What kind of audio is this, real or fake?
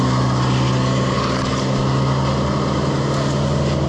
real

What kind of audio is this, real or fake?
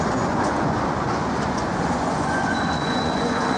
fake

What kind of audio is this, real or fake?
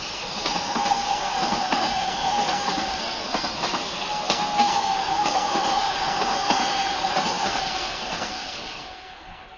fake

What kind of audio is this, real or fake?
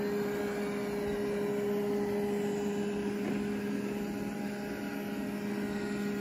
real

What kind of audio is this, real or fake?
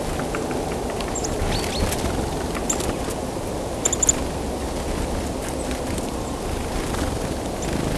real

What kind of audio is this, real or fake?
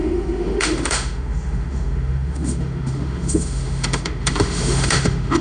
fake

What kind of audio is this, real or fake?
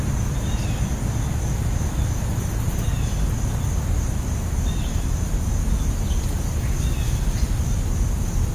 real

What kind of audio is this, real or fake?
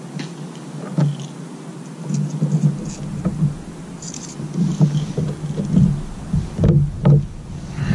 real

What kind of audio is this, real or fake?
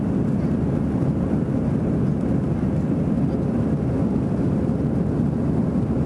real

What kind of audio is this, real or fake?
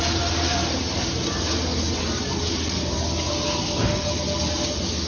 real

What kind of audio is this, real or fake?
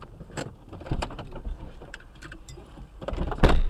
fake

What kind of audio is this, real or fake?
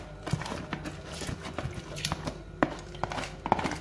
real